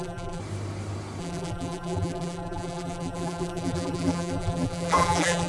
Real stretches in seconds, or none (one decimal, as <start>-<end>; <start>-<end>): 0.4-1.2